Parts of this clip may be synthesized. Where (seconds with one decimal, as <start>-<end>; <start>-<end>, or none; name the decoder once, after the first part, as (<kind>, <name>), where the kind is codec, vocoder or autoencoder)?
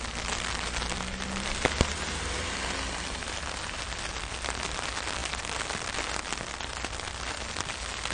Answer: none